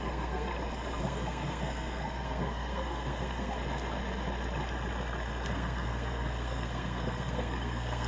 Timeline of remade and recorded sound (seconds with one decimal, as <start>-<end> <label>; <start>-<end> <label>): 0.0-0.5 remade; 0.5-1.0 recorded; 1.0-3.6 remade; 3.6-5.5 recorded; 5.5-8.1 remade